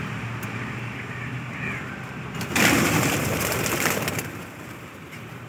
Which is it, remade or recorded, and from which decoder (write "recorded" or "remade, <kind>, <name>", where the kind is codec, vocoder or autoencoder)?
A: remade, vocoder, BigVGAN v2